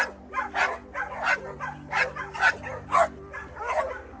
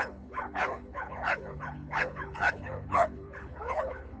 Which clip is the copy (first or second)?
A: second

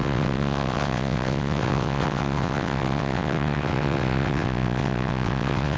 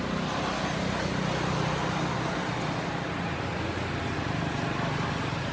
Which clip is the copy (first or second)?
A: first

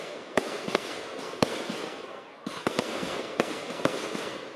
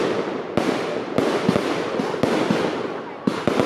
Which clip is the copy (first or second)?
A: first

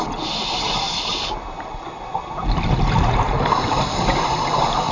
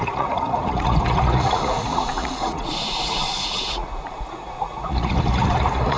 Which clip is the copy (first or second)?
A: second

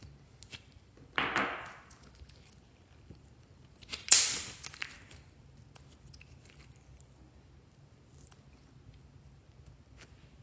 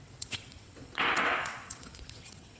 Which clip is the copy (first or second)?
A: second